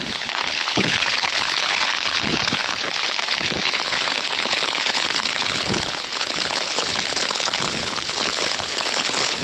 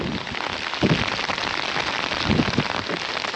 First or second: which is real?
second